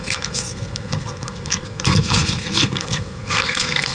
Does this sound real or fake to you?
fake